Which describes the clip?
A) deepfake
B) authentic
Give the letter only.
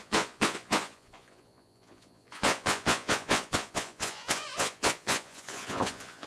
A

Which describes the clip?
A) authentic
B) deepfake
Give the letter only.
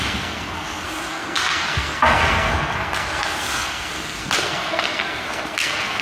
B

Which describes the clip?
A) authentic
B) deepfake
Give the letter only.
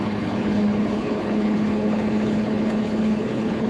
B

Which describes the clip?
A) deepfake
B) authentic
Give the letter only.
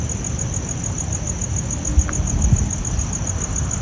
B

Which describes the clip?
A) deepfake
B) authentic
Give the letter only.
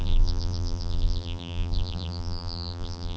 A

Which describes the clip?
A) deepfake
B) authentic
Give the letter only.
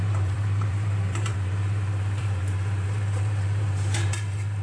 A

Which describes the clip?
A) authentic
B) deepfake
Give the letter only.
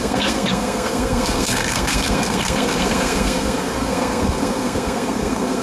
B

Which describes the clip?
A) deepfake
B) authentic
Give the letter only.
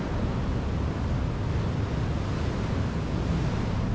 B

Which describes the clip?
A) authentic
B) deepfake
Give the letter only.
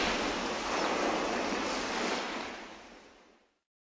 A